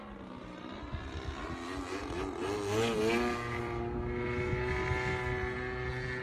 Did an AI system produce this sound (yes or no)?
no